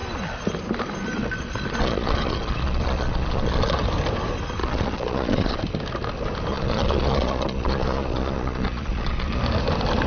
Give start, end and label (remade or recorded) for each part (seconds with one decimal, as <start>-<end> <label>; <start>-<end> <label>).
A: 0.0-1.8 recorded; 1.8-3.8 remade; 3.8-4.6 recorded; 4.6-5.6 remade; 5.6-6.5 recorded; 6.5-9.4 remade; 9.4-10.1 recorded